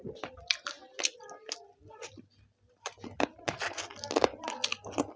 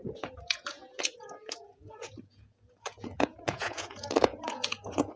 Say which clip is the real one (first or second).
first